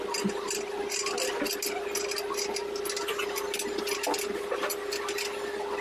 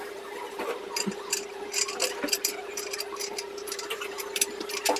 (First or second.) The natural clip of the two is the first